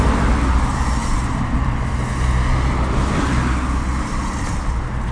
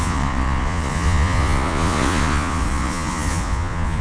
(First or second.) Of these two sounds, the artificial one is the second